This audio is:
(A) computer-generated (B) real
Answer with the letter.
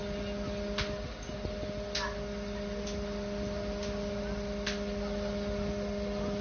B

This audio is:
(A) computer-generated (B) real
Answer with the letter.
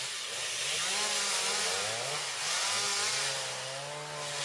B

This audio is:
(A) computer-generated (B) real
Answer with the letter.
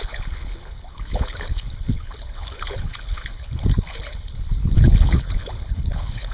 A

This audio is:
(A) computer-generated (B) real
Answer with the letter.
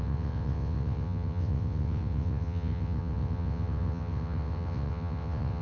A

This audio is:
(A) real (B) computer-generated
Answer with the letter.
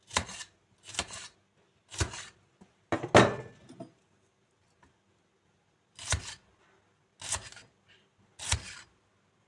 A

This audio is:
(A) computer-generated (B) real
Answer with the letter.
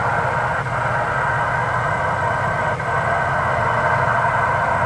B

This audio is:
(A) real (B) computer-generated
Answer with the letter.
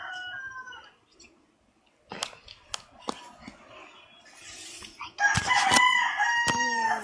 A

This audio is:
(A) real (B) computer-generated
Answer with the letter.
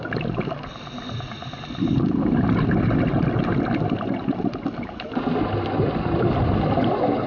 A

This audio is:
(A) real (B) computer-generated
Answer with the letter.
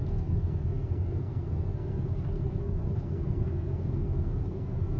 B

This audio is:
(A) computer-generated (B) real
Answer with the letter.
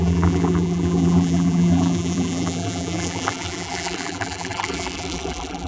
A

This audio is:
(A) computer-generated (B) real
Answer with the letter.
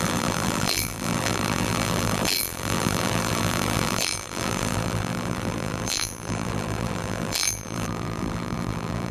A